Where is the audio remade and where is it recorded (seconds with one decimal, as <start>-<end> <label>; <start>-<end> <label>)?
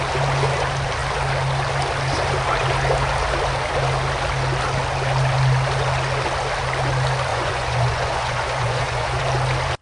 0.0-7.3 recorded; 7.3-9.2 remade; 9.2-9.8 recorded